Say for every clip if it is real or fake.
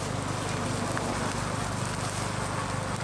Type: real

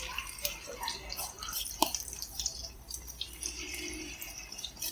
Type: fake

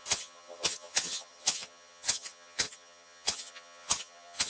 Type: fake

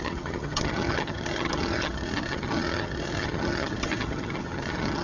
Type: fake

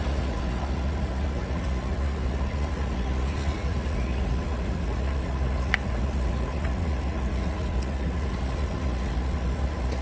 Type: fake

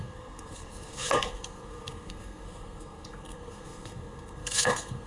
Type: fake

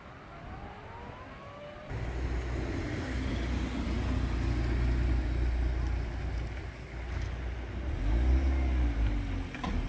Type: real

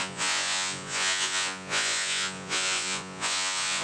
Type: fake